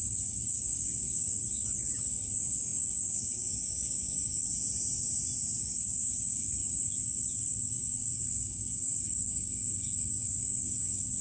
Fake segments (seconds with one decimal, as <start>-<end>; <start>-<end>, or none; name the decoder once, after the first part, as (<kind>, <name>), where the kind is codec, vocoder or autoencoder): 0.0-4.5 (codec, DAC); 5.6-11.2